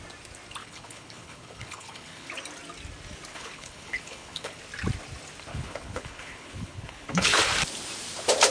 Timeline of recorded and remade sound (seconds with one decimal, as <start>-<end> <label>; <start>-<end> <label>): 0.0-0.6 recorded; 0.6-2.3 remade; 2.3-3.3 recorded; 3.3-4.6 remade; 4.6-5.5 recorded; 5.5-7.4 remade; 7.4-8.5 recorded